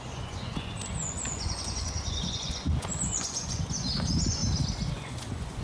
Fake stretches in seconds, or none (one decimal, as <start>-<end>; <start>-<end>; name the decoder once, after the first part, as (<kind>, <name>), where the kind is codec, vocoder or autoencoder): 0.0-4.4 (vocoder, Vocos); 4.9-5.6